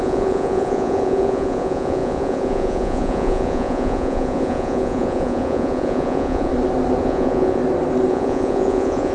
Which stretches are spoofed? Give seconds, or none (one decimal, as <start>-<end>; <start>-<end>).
0.0-6.5; 7.0-7.6; 8.1-9.1